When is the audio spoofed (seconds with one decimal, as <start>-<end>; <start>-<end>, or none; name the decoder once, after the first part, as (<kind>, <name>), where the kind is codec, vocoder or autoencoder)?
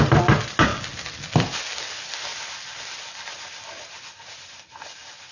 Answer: none